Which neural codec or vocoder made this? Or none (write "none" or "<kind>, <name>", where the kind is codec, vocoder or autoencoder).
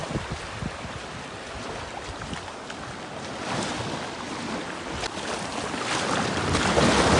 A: none